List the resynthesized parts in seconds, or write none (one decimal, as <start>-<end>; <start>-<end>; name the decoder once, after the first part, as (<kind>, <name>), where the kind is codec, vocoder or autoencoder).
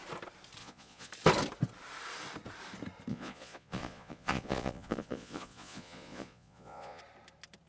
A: 0.6-1.1 (vocoder, Vocos); 3.1-7.0